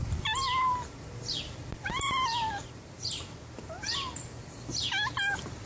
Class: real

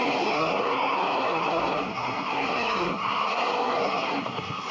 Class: fake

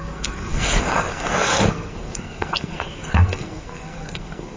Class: fake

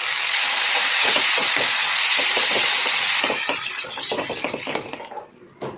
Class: real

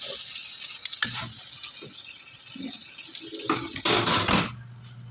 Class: real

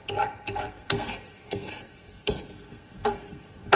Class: fake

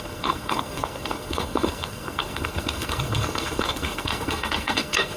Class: fake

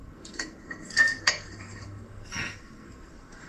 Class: fake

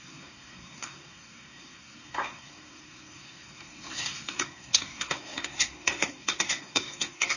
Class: fake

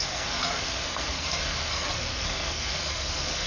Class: fake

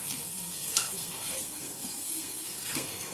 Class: fake